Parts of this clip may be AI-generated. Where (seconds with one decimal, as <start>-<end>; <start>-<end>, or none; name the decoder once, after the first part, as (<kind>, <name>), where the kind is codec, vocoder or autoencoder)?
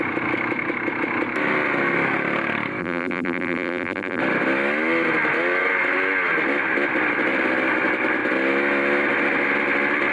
2.8-4.2 (vocoder, BigVGAN v2)